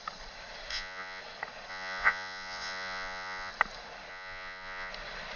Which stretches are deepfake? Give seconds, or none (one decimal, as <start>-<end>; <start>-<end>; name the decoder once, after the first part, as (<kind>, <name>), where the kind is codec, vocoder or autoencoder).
0.7-1.2 (vocoder, Vocos); 1.7-3.5; 4.1-4.9